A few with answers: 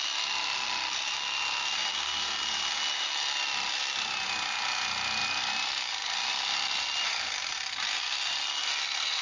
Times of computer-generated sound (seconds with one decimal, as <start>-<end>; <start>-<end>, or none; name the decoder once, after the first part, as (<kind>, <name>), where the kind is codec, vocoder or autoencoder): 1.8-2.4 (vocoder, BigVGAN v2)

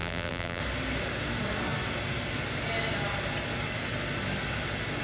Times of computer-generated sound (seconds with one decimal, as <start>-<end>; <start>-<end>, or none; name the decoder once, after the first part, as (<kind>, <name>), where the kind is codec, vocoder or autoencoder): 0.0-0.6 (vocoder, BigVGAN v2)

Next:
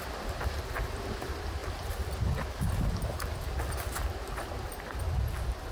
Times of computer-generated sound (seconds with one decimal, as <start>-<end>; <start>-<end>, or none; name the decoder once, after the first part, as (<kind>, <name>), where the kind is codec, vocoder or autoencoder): none